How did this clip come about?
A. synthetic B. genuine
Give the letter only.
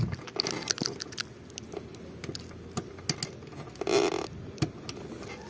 B